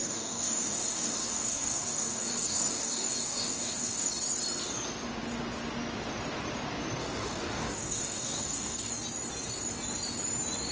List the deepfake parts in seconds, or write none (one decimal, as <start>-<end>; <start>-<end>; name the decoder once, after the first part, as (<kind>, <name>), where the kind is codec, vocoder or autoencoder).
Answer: 0.0-4.1 (codec, DAC); 7.0-8.9